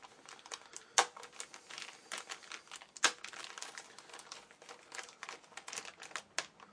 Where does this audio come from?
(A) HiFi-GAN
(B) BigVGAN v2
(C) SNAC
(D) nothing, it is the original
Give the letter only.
D